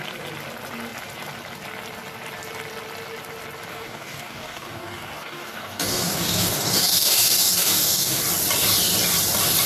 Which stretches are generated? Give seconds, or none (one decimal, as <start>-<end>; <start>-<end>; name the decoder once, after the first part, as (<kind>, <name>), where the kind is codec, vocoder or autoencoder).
3.7-8.2 (codec, DAC)